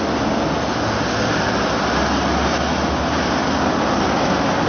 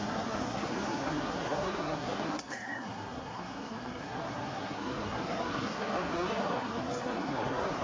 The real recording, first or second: first